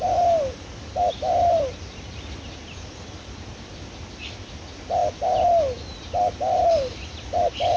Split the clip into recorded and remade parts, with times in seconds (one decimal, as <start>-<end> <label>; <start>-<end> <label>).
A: 0.0-7.8 recorded